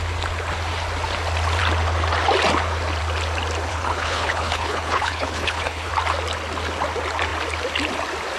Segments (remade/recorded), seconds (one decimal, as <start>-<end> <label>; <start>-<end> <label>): 0.0-3.7 recorded; 3.7-5.9 remade; 5.9-8.4 recorded